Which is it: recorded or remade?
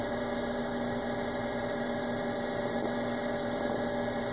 recorded